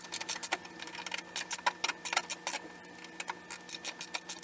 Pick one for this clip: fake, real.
real